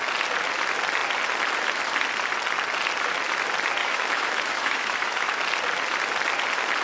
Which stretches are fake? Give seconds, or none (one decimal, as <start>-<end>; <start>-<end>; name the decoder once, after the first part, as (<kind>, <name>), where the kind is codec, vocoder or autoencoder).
3.8-5.4 (autoencoder, DAC-VAE)